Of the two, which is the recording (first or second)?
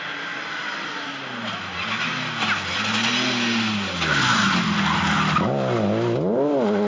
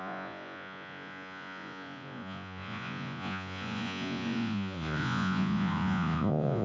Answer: first